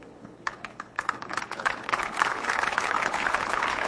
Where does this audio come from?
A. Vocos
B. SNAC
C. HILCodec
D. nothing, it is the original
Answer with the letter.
C